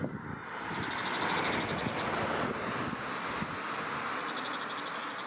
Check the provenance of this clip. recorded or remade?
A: recorded